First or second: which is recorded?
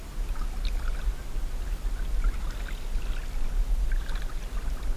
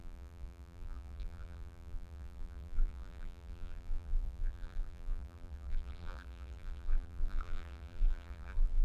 first